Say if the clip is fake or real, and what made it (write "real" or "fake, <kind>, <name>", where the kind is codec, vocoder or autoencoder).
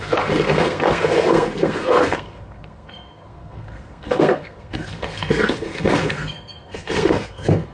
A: fake, codec, SNAC